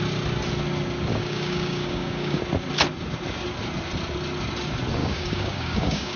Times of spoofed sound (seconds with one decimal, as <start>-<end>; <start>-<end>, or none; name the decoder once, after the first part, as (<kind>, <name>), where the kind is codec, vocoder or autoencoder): 1.1-2.4 (codec, DAC); 5.0-6.2